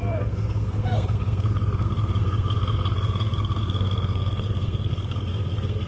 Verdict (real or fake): fake